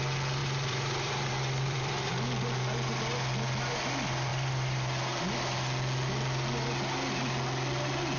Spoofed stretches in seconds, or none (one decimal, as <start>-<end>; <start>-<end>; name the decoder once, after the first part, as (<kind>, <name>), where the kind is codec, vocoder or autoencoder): 0.4-2.1 (vocoder, BigVGAN v2); 4.3-5.2